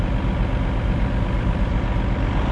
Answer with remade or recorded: recorded